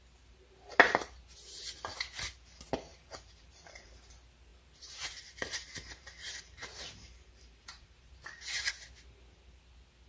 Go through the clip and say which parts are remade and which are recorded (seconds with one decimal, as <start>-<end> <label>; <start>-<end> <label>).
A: 0.0-2.9 recorded; 2.9-4.1 remade; 4.1-4.5 recorded; 4.5-8.7 remade; 8.7-10.1 recorded